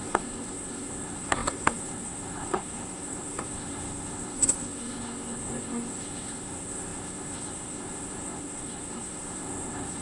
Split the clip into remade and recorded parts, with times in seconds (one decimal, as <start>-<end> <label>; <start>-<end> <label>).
0.0-10.0 remade